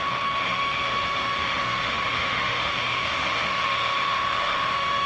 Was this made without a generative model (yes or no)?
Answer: no